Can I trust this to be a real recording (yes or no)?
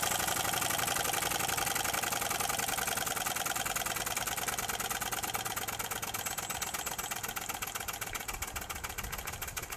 yes